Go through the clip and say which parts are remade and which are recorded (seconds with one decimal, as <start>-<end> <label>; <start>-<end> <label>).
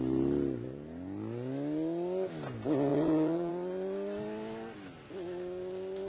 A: 0.0-2.9 recorded; 2.9-3.5 remade; 3.5-6.1 recorded